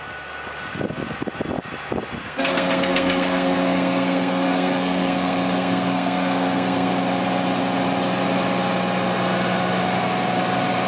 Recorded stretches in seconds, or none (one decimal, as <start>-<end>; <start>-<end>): 0.0-2.2; 6.9-10.9